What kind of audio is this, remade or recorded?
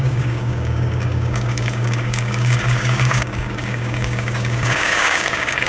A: remade